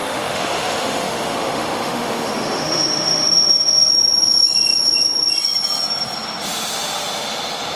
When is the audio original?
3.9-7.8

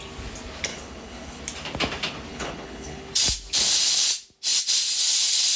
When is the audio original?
0.0-0.7; 1.4-2.3; 3.1-5.6

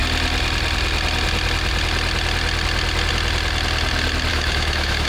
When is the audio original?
0.0-4.3

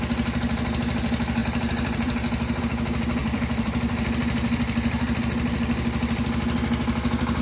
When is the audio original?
0.0-1.4; 2.6-3.2; 5.2-7.4

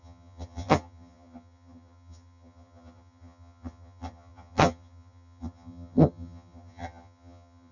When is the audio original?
none

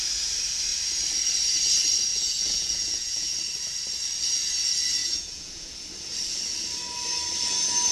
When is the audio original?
0.0-2.1; 3.3-5.0; 5.8-7.9